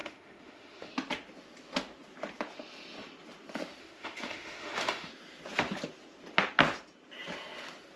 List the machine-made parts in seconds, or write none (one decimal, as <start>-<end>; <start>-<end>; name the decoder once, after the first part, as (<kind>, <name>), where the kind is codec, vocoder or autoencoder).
0.0-0.9 (autoencoder, DAC-VAE); 3.8-5.1